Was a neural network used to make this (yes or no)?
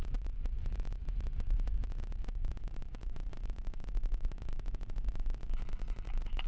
yes